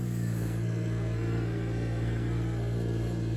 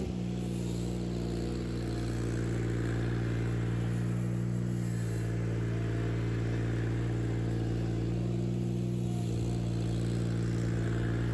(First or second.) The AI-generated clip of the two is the first